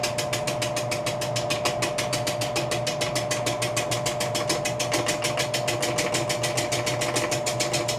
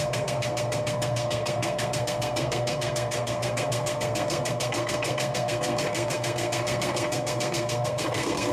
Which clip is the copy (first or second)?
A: second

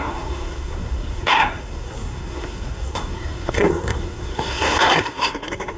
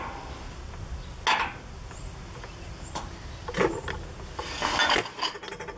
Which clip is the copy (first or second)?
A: first